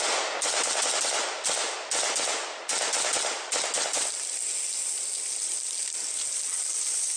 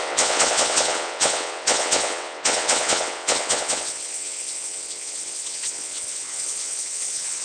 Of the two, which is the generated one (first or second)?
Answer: second